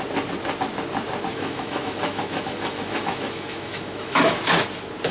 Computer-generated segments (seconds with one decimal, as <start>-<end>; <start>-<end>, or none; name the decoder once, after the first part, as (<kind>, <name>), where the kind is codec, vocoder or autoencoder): 1.3-4.4 (autoencoder, DAC-VAE)

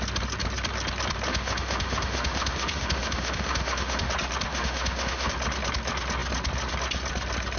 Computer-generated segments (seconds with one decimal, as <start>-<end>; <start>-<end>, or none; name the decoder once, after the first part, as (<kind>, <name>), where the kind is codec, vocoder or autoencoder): 1.3-4.1 (autoencoder, DAC-VAE); 4.5-5.3

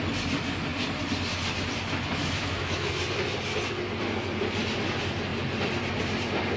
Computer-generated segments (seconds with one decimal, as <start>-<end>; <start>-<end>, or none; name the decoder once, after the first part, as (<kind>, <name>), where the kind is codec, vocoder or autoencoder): 2.2-2.9 (autoencoder, DAC-VAE)

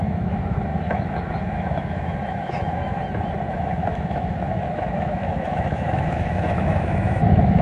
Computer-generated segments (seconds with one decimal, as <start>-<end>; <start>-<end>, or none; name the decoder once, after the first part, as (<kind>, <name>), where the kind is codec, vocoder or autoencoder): 0.0-3.0 (autoencoder, DAC-VAE); 3.5-7.6